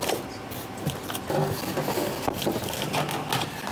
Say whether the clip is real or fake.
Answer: real